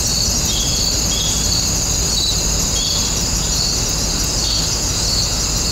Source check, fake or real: real